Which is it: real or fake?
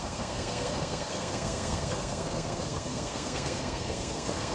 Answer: fake